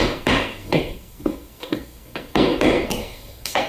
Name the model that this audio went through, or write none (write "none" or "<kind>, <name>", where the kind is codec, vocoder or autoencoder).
codec, SNAC